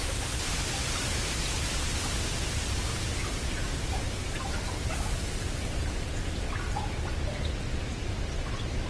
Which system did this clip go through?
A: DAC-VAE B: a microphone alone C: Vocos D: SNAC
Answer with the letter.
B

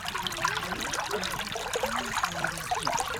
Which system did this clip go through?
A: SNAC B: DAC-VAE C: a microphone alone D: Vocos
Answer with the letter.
C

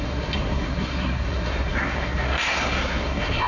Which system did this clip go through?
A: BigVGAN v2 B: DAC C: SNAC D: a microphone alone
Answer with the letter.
C